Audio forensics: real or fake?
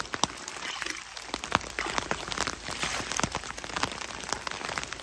real